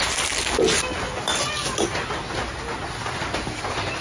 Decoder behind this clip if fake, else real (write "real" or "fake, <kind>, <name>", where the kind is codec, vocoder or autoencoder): real